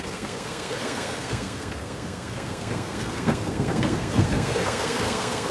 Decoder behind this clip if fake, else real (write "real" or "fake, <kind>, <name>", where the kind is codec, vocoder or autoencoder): fake, codec, SNAC